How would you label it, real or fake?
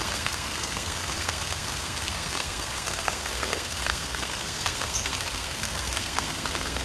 fake